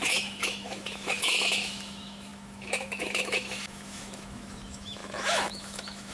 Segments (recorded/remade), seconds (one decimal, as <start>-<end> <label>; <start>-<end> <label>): 0.0-6.1 remade